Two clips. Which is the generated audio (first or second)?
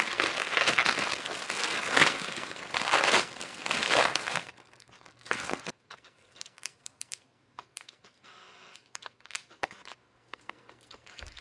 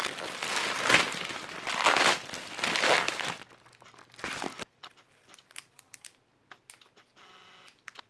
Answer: first